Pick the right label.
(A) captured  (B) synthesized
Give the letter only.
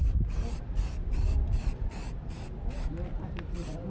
A